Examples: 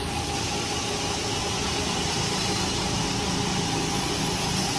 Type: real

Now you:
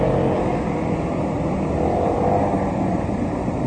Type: real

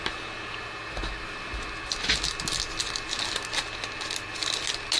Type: real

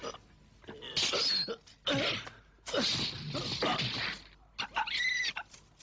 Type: real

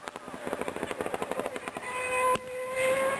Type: real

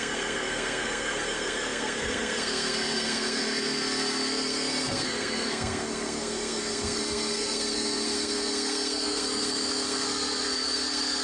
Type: fake